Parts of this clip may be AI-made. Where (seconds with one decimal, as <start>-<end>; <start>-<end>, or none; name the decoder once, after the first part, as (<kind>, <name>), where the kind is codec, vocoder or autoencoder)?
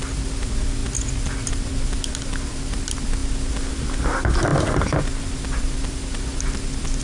none